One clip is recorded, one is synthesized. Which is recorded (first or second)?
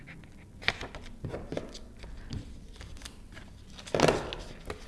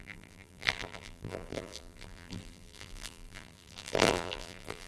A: first